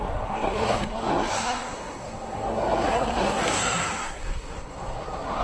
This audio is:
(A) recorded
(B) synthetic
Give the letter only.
B